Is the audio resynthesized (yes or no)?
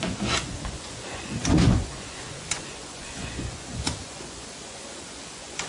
yes